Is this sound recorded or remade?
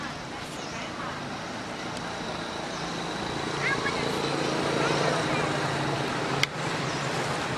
recorded